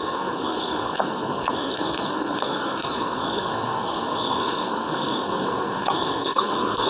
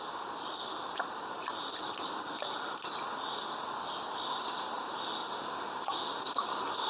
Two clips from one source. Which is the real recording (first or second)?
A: second